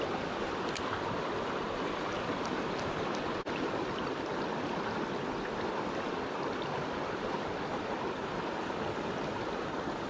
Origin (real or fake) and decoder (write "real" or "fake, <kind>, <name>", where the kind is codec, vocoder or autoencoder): real